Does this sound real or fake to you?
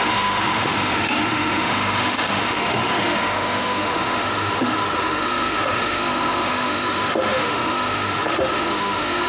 fake